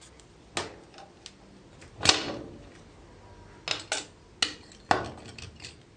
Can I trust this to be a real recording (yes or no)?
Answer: yes